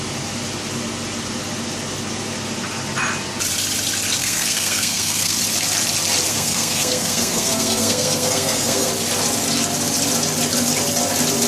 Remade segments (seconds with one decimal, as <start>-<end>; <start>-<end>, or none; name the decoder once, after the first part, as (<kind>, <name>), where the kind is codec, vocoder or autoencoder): 4.2-5.4 (codec, SNAC); 6.3-8.9